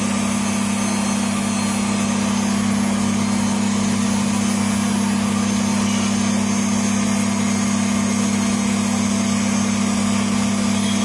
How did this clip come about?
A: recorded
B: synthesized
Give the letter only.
A